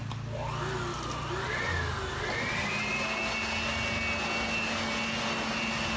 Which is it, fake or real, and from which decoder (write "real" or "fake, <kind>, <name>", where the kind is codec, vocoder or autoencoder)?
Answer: real